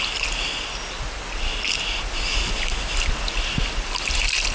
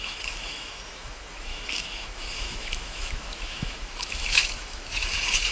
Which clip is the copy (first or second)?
second